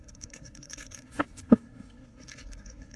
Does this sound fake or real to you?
fake